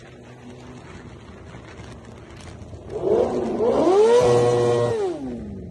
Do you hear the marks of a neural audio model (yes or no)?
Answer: no